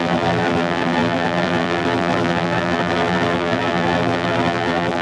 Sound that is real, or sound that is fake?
fake